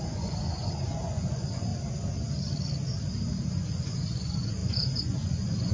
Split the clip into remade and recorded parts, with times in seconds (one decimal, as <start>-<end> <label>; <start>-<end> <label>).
0.0-1.7 remade; 1.7-3.5 recorded; 3.5-5.7 remade